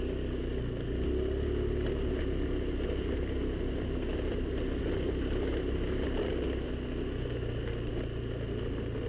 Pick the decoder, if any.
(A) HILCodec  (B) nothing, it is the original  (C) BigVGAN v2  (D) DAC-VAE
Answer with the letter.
B